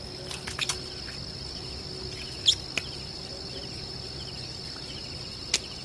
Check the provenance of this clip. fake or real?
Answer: real